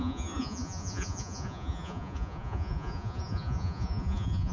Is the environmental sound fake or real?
fake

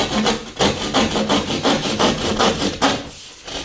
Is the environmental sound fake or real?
real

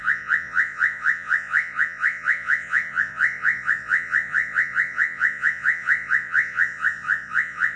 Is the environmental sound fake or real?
fake